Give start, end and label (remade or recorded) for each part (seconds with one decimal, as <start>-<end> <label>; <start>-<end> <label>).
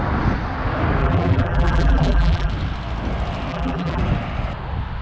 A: 0.0-1.0 recorded; 1.0-2.5 remade; 2.5-3.5 recorded; 3.5-4.0 remade; 4.0-5.0 recorded